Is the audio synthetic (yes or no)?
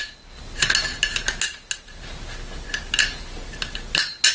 no